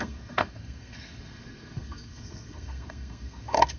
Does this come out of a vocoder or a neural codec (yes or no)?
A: yes